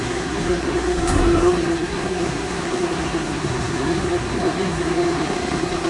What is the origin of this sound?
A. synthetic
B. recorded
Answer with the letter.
A